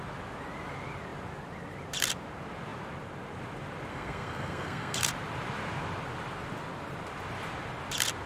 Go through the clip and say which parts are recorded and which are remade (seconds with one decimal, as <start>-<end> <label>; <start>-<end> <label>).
0.0-3.9 recorded; 3.9-5.1 remade; 5.1-8.3 recorded